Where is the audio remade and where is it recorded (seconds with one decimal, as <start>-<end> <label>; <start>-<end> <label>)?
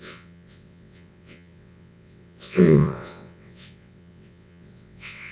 0.0-5.3 remade